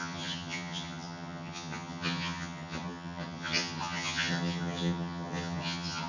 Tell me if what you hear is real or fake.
fake